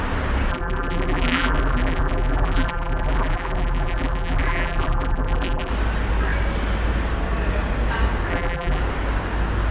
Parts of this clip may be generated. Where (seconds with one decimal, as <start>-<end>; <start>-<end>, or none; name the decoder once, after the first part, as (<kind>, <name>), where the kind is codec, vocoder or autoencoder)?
0.5-5.7 (vocoder, BigVGAN v2); 8.3-8.8